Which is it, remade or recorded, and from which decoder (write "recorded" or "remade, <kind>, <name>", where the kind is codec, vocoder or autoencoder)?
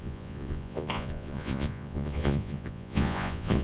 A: remade, vocoder, Vocos